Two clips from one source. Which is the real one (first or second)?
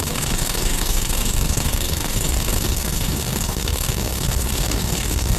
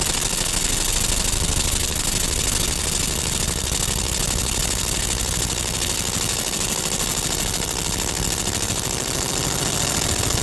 second